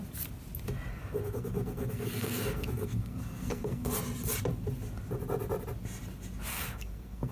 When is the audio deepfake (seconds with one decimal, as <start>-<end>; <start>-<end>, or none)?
0.9-3.9; 6.5-7.3